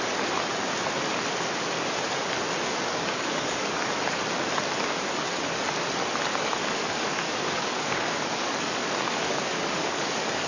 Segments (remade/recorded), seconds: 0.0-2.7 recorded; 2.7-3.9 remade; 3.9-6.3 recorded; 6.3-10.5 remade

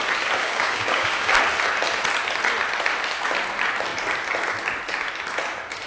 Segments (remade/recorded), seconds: 0.0-0.4 recorded; 0.4-1.3 remade; 1.3-5.9 recorded

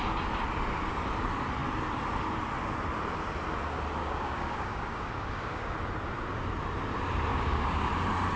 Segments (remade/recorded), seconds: 0.0-4.0 recorded; 4.0-5.7 remade; 5.7-7.3 recorded; 7.3-7.9 remade; 7.9-8.4 recorded

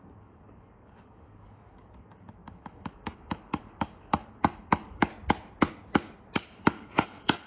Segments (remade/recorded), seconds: 0.0-5.1 remade; 5.1-6.6 recorded; 6.6-7.5 remade

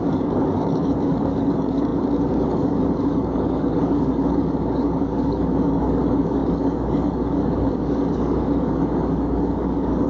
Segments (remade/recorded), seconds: 0.0-10.1 remade